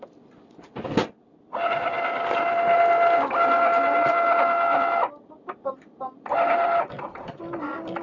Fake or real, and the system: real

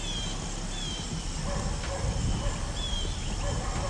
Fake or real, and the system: real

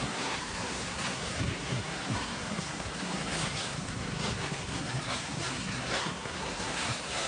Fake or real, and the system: fake, codec, SNAC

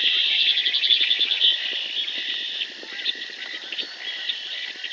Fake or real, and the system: real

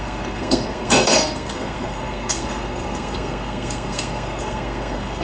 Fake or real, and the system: fake, codec, SNAC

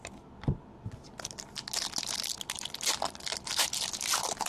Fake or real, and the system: real